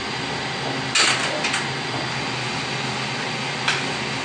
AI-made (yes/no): no